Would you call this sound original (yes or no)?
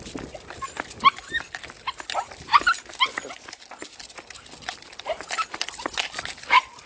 yes